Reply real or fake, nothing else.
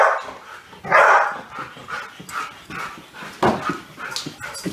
real